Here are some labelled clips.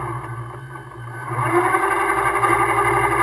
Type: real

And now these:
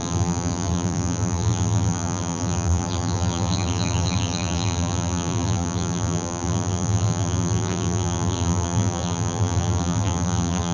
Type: fake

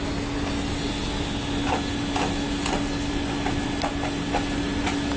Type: real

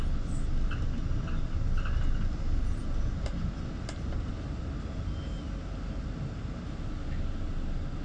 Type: real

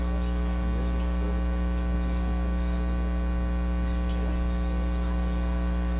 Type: real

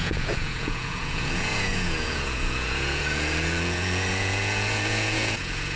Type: fake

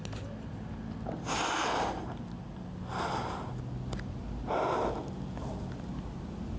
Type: real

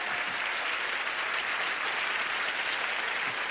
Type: real